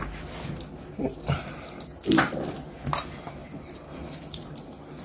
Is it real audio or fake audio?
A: real